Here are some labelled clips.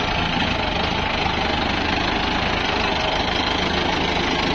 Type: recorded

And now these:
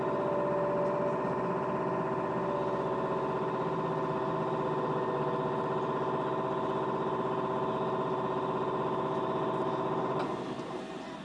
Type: recorded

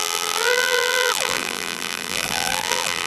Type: remade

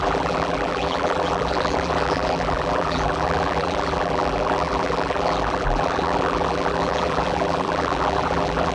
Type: remade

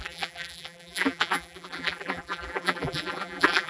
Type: remade